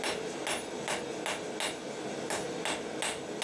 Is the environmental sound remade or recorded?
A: recorded